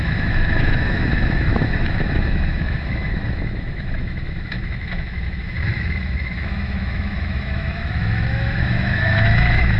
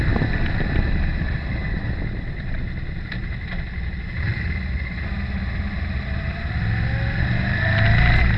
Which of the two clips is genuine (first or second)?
second